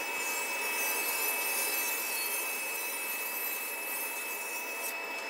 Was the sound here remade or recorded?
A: remade